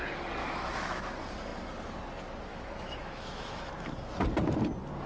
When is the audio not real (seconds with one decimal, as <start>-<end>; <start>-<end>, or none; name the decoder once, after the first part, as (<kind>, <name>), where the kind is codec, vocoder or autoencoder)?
0.4-1.1 (autoencoder, DAC-VAE); 2.5-3.7